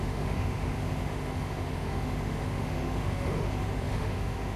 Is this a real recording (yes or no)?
no